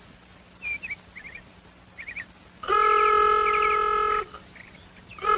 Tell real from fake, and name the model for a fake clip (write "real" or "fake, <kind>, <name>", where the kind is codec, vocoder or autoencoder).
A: real